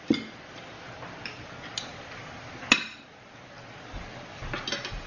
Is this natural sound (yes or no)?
yes